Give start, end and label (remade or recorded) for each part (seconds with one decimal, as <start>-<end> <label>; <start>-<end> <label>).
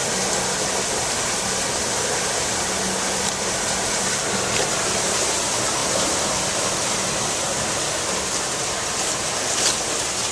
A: 0.0-5.8 recorded; 5.8-7.7 remade; 7.7-10.3 recorded